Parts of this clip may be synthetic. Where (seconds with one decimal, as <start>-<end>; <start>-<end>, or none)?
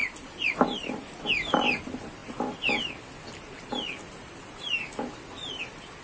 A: none